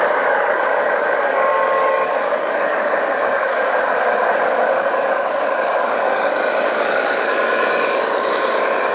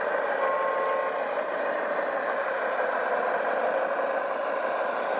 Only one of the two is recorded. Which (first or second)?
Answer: second